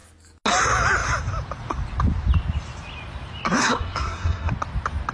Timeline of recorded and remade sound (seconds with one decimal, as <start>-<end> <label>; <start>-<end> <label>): 0.0-3.6 recorded; 3.6-4.5 remade; 4.5-5.1 recorded